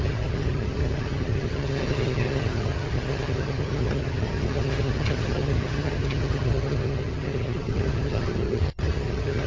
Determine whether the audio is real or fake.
fake